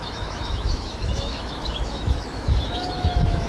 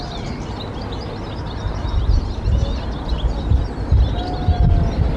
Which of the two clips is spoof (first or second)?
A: first